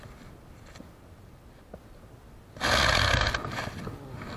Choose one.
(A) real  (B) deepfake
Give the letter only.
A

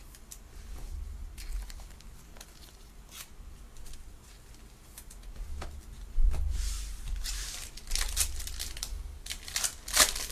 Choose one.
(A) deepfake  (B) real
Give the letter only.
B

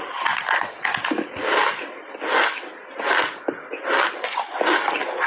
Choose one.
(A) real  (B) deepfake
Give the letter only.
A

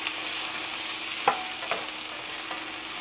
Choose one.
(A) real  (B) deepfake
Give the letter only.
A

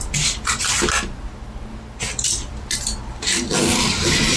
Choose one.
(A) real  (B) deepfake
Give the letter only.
A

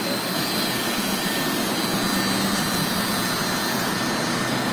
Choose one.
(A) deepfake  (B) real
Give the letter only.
B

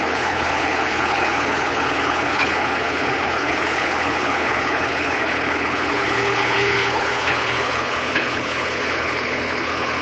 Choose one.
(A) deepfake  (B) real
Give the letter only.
A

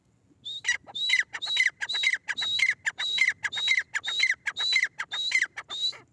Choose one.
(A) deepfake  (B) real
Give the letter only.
B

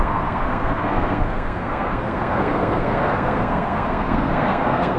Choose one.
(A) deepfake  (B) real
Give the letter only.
A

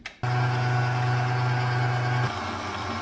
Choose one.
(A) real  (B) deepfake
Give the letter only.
A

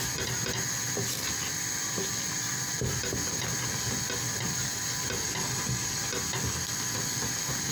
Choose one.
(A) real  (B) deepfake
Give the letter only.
A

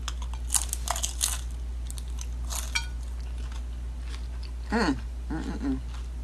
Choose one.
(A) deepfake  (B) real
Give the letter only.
B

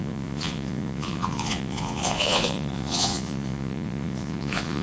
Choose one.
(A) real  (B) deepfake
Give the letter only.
B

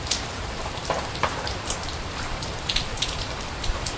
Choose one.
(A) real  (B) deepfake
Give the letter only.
B